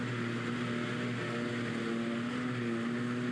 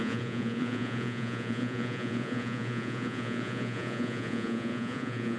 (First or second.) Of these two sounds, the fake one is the second